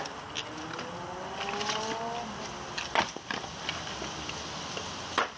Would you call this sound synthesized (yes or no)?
no